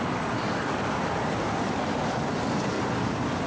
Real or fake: fake